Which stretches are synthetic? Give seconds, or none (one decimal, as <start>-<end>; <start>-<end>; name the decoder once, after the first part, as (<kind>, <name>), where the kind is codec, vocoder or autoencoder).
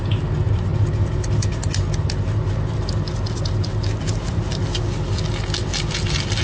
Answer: none